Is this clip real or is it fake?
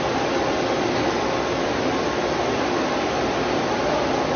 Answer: real